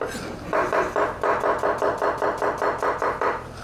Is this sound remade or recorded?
recorded